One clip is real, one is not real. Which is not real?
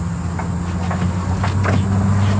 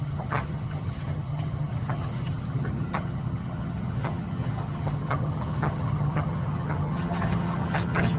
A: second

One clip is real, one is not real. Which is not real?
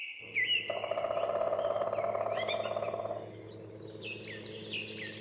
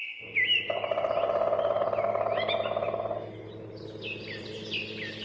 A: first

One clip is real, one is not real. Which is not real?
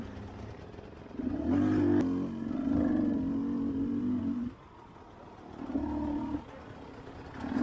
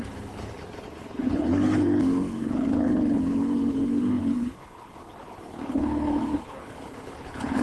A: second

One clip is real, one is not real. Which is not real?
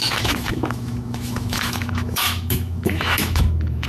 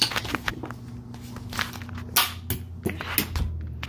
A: first